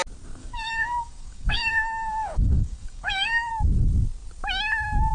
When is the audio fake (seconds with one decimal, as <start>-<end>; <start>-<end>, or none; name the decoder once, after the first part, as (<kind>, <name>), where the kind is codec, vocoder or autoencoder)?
0.4-3.5 (codec, DAC)